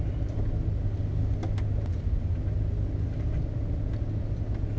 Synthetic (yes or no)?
no